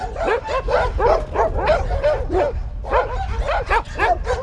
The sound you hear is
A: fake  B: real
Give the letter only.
B